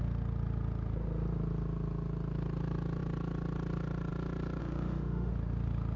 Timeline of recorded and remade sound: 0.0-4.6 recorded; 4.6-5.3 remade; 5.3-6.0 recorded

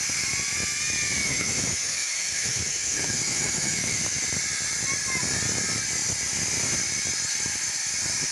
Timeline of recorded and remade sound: 0.0-1.2 recorded; 1.2-4.0 remade; 4.0-8.3 recorded

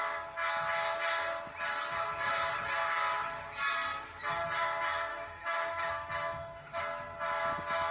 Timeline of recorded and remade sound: 0.0-5.1 recorded; 5.1-6.8 remade; 6.8-7.9 recorded

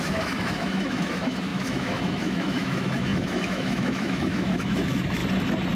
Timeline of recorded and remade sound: 0.0-5.2 remade; 5.2-5.8 recorded

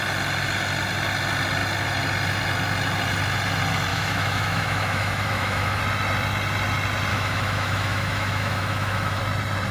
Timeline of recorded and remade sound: 0.0-3.9 recorded; 3.9-5.8 remade; 5.8-7.1 recorded; 7.1-9.2 remade; 9.2-9.7 recorded

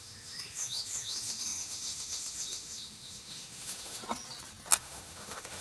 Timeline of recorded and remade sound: 0.0-4.0 remade; 4.0-4.8 recorded; 4.8-5.6 remade